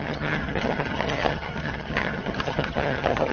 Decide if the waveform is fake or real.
fake